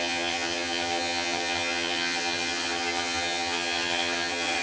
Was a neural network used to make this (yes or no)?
yes